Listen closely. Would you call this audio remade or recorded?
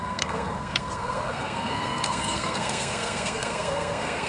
remade